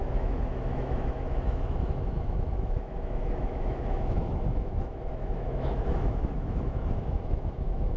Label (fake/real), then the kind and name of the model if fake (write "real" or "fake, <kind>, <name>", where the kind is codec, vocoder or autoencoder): fake, autoencoder, DAC-VAE